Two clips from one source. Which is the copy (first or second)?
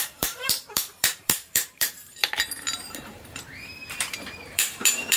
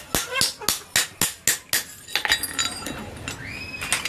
first